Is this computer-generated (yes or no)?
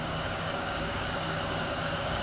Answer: yes